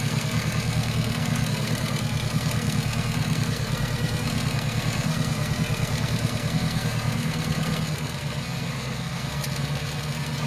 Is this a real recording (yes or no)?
no